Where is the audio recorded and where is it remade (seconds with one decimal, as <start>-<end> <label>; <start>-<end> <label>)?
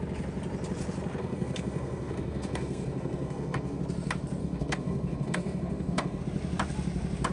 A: 0.0-1.2 recorded; 1.2-3.8 remade; 3.8-4.4 recorded; 4.4-6.2 remade; 6.2-7.3 recorded